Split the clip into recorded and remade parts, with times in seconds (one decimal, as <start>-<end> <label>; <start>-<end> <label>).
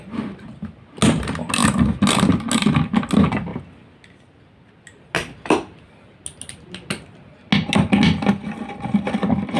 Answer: 0.0-9.6 recorded